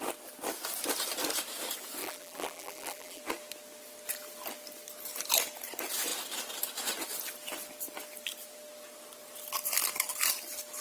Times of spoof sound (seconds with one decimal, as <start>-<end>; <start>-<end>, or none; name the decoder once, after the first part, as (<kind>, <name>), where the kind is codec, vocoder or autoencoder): 2.0-3.2 (vocoder, BigVGAN v2)